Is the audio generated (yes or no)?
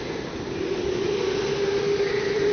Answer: no